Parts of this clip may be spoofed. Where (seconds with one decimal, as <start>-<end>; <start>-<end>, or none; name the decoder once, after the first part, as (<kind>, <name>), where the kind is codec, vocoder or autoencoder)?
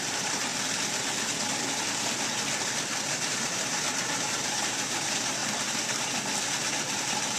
0.0-0.5 (vocoder, BigVGAN v2); 3.0-5.4; 6.7-7.4